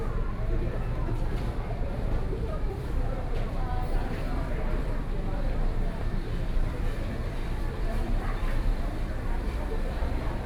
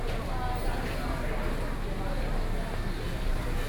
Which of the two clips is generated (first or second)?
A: first